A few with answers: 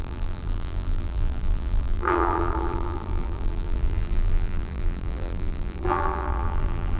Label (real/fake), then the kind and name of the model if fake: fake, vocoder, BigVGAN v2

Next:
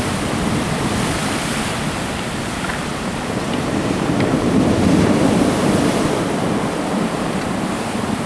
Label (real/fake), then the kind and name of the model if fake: fake, vocoder, BigVGAN v2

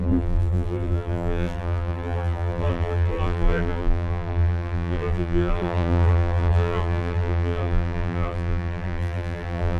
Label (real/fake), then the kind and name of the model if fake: fake, vocoder, BigVGAN v2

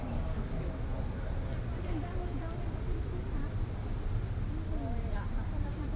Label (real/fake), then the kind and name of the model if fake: real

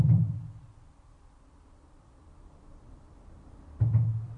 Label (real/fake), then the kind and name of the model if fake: fake, vocoder, BigVGAN v2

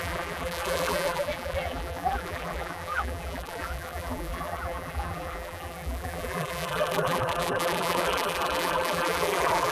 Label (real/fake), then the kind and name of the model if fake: fake, vocoder, BigVGAN v2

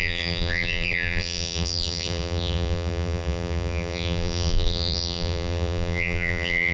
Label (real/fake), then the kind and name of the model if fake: fake, vocoder, BigVGAN v2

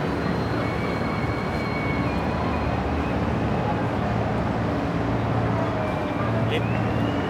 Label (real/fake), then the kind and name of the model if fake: real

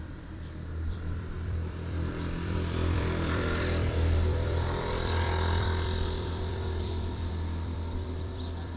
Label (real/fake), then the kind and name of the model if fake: fake, vocoder, BigVGAN v2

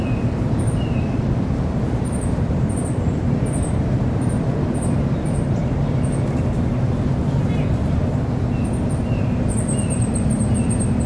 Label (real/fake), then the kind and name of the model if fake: fake, vocoder, BigVGAN v2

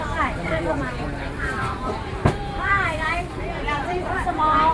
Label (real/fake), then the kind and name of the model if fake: fake, vocoder, BigVGAN v2